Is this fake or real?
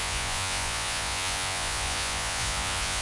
fake